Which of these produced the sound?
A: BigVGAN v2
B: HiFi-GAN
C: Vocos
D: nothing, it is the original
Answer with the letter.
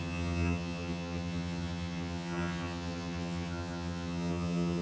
B